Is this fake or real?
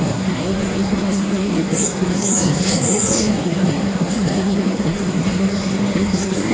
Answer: fake